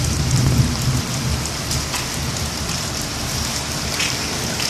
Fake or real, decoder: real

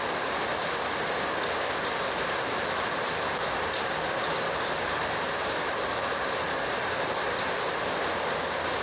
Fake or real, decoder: real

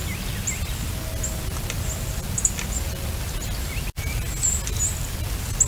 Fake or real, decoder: real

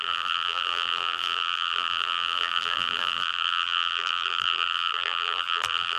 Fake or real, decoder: fake, vocoder, BigVGAN v2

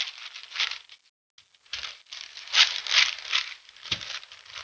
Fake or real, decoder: real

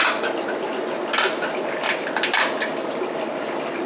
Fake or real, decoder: real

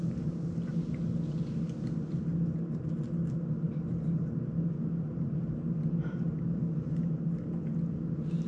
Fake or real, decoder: real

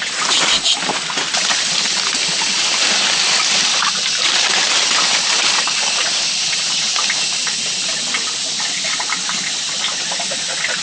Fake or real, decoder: real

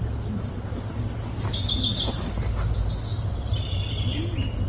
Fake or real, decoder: real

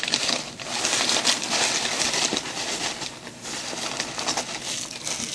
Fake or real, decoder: real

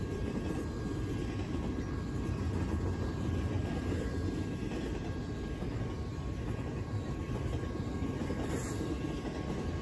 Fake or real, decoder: real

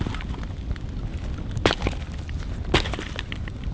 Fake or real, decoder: real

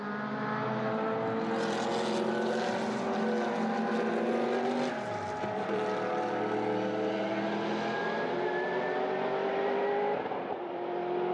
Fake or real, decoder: real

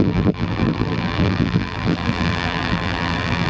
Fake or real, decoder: fake, vocoder, BigVGAN v2